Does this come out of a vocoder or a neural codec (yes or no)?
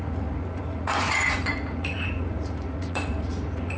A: yes